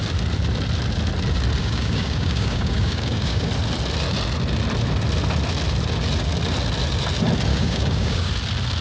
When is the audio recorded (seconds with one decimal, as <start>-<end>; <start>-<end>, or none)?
0.0-1.6; 3.5-7.5; 8.3-8.8